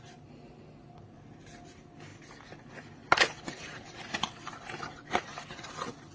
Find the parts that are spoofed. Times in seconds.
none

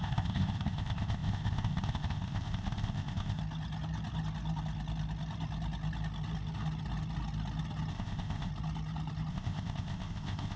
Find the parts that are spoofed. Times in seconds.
0.0-3.4 (codec, ZipCodec); 7.9-8.5; 9.3-10.6

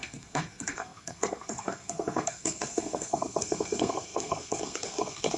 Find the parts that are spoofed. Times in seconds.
0.0-5.4 (codec, SNAC)